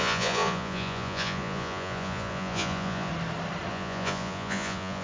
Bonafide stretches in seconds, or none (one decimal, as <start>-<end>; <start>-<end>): 3.1-3.7